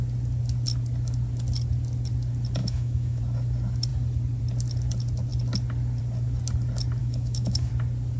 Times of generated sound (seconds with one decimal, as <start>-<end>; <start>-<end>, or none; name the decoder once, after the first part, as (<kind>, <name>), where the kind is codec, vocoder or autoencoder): 2.6-3.2 (autoencoder, DAC-VAE); 7.0-7.7